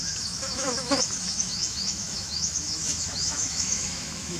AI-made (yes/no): yes